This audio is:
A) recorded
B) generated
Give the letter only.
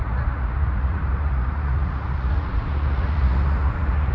B